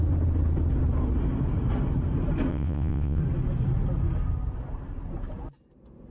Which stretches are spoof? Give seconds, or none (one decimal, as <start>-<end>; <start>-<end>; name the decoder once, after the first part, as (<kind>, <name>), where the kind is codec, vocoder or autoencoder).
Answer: 2.5-3.2 (vocoder, WaveNeXt)